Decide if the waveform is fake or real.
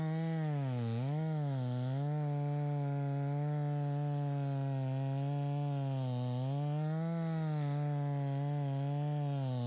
real